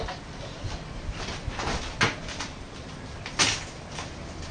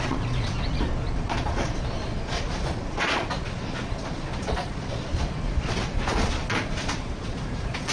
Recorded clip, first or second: first